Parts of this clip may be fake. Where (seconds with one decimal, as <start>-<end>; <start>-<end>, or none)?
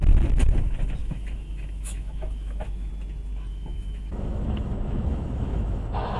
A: 1.0-2.9; 3.5-6.2